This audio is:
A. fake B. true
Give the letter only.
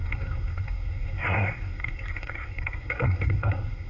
A